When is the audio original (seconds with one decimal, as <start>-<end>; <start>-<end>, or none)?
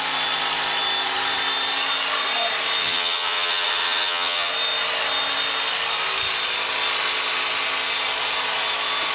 0.0-2.8; 4.5-9.1